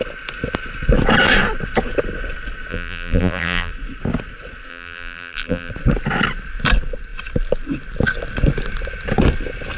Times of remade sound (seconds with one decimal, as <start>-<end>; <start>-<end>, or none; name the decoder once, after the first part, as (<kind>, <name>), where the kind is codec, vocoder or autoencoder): 2.7-3.7 (vocoder, BigVGAN v2); 4.7-5.7